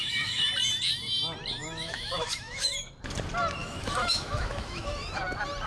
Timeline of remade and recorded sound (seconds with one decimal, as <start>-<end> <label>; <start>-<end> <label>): 0.0-0.5 remade; 0.5-1.6 recorded; 1.6-2.9 remade; 2.9-3.6 recorded; 3.6-5.2 remade; 5.2-5.7 recorded